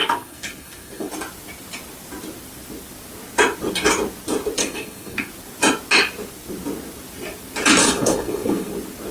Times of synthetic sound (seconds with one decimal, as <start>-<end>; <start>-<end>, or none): 0.0-1.1; 4.6-5.3; 7.8-8.7